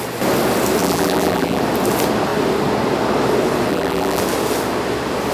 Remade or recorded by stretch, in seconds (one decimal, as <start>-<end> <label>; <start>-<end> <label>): 0.0-0.8 recorded; 0.8-1.6 remade; 1.6-3.7 recorded; 3.7-4.2 remade; 4.2-5.3 recorded

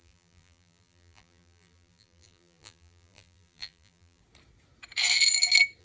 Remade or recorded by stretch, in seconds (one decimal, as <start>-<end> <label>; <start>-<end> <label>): 0.0-4.2 remade; 4.2-5.8 recorded

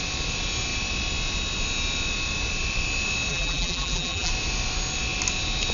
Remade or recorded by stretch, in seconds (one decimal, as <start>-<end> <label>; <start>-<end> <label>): 0.0-3.3 recorded; 3.3-4.3 remade; 4.3-5.7 recorded

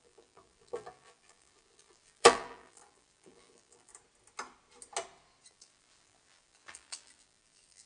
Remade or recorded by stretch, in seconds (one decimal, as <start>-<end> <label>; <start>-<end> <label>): 0.0-3.9 remade; 3.9-5.5 recorded; 5.5-7.9 remade